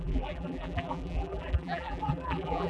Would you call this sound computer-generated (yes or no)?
yes